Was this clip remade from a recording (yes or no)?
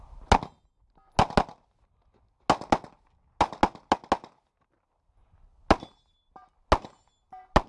no